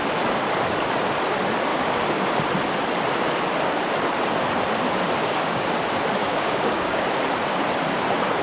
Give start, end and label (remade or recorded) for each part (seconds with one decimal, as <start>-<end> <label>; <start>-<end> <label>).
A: 0.0-1.7 recorded; 1.7-2.3 remade; 2.3-5.2 recorded; 5.2-5.7 remade; 5.7-6.2 recorded; 6.2-7.2 remade; 7.2-8.4 recorded